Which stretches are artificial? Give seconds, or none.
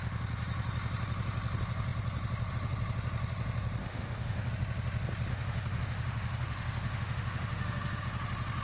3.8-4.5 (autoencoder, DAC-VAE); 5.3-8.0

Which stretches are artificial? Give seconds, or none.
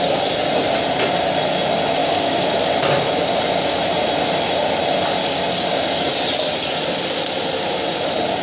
2.0-2.6 (codec, DAC); 5.2-6.1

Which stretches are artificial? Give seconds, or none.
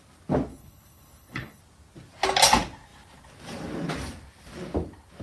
0.5-1.6 (codec, HILCodec)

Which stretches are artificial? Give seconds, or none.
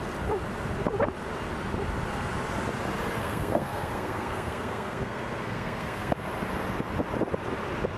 3.2-6.1 (codec, SNAC)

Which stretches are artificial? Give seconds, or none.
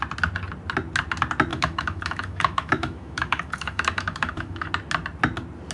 1.5-4.7 (autoencoder, DAC-VAE)